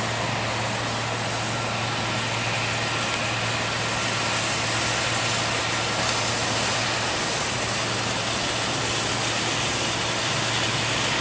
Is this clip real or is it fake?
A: real